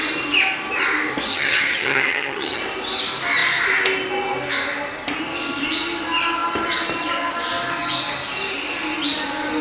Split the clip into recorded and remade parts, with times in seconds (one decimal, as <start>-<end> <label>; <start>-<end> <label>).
0.0-1.3 recorded; 1.3-2.6 remade; 2.6-9.6 recorded